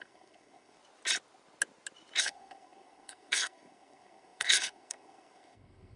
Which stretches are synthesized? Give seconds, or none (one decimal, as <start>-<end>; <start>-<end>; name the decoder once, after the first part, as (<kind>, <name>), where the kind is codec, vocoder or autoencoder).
0.0-0.8 (codec, SNAC); 2.2-6.0